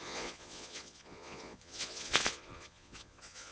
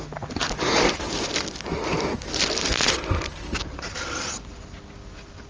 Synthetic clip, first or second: first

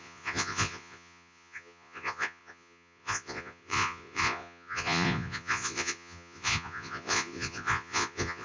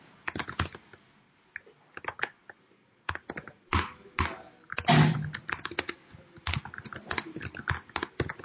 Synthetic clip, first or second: first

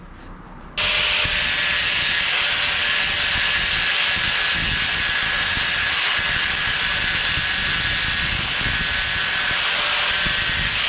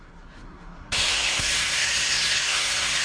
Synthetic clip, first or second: second